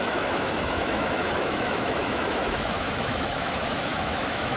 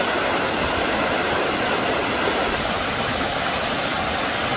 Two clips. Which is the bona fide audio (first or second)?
second